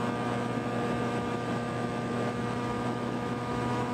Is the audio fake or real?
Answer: fake